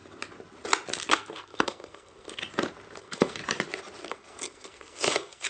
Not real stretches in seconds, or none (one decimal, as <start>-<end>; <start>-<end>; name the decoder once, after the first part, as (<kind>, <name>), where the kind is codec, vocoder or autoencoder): 1.1-2.4 (codec, SNAC); 3.0-3.4; 4.1-5.5

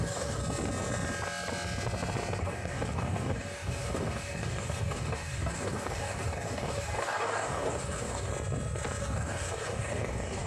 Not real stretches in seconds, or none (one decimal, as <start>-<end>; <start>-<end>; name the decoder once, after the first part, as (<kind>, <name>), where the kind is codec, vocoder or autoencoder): 0.0-0.4 (codec, DAC); 2.4-8.3; 9.0-10.5

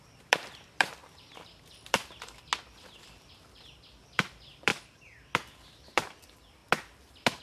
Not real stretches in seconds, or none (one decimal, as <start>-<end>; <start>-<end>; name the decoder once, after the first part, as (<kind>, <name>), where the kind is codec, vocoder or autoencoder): 0.0-2.5 (vocoder, BigVGAN v2); 3.0-4.7; 5.4-6.6

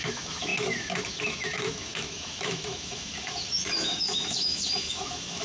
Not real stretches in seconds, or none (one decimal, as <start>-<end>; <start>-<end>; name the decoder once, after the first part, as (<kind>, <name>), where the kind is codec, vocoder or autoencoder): 0.0-5.4 (autoencoder, DAC-VAE)